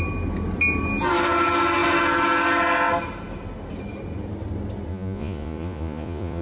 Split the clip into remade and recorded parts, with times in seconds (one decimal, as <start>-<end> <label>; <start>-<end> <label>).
0.0-4.9 recorded; 4.9-6.4 remade